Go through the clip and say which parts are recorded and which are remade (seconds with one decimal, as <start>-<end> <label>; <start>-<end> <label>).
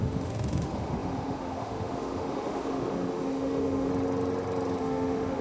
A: 0.0-3.9 remade; 3.9-4.8 recorded; 4.8-5.4 remade